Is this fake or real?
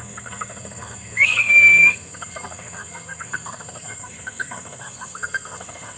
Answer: fake